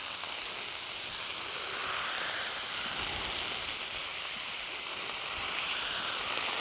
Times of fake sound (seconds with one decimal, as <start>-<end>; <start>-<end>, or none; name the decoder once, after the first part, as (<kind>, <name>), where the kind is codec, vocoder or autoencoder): 1.8-2.5 (vocoder, BigVGAN v2); 4.1-4.7